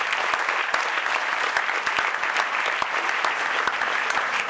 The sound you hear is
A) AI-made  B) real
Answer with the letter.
B